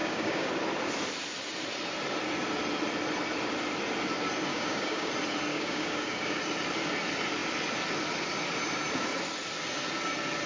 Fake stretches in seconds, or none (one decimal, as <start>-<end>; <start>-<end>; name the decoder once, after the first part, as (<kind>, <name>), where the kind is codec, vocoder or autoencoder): 0.0-0.5 (codec, DAC); 4.5-5.1; 5.5-6.4